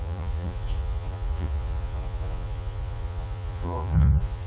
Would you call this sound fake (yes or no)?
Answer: yes